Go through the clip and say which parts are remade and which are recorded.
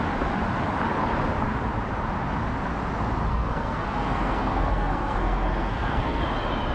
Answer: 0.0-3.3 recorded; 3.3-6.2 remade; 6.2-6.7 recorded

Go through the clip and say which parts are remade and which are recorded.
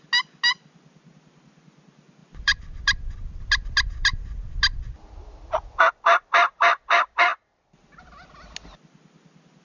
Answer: 0.0-2.2 recorded; 2.2-2.8 remade; 2.8-9.6 recorded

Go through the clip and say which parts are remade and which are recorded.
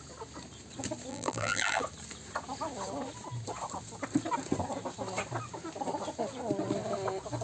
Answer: 0.0-1.1 recorded; 1.1-1.8 remade; 1.8-7.4 recorded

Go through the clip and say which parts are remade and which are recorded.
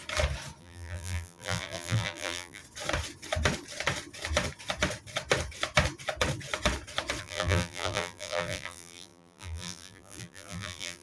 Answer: 0.0-0.6 recorded; 0.6-2.6 remade; 2.6-7.2 recorded; 7.2-11.0 remade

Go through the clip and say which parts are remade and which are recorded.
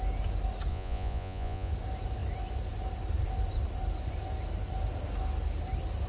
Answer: 0.0-0.7 recorded; 0.7-1.7 remade; 1.7-6.1 recorded